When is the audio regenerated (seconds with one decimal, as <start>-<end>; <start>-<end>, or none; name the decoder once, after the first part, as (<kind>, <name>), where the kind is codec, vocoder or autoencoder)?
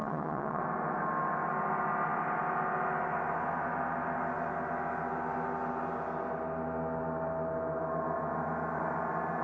0.0-0.6 (vocoder, WaveNeXt)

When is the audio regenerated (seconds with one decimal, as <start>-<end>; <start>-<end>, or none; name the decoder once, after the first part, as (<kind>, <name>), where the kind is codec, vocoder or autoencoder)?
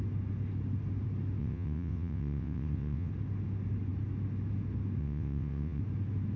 1.4-3.1 (vocoder, WaveNeXt); 5.0-5.8